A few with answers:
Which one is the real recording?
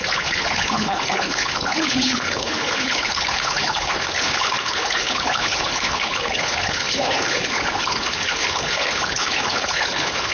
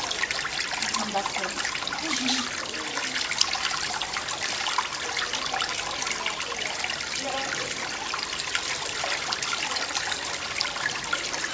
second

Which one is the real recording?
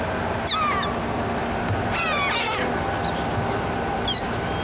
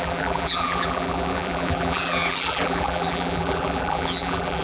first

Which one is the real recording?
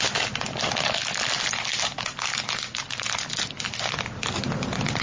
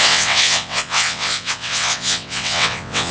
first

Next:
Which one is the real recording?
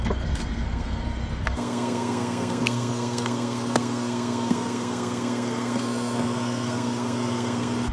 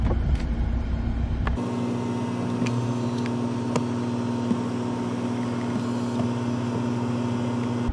second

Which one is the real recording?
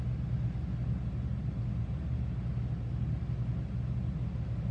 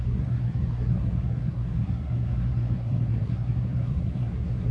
first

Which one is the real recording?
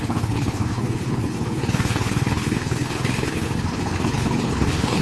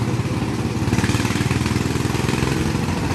second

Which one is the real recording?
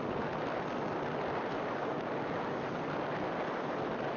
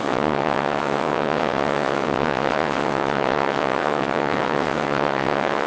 first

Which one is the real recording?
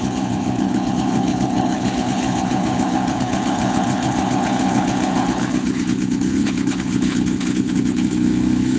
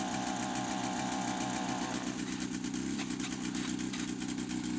second